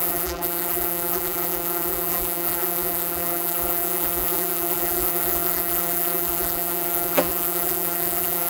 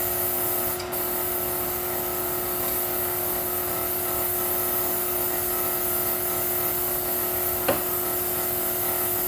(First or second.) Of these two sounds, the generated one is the first